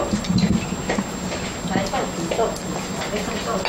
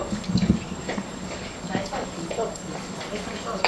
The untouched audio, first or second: first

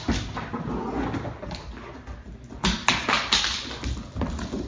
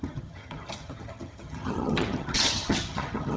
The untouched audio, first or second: first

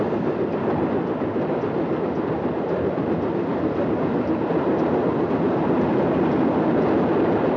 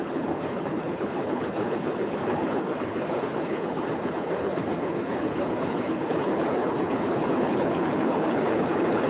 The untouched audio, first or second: first